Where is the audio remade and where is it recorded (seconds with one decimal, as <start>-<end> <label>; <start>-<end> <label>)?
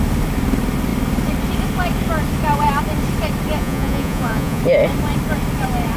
0.0-3.6 recorded; 3.6-4.6 remade; 4.6-6.0 recorded